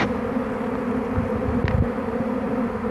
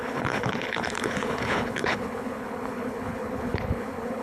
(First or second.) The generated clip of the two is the second